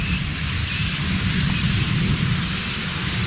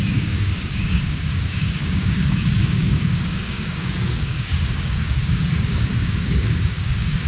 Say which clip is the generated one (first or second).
second